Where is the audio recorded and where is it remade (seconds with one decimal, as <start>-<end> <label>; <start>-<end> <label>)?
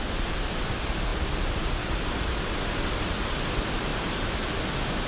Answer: 0.0-5.1 recorded